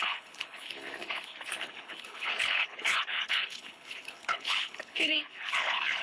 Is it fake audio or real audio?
fake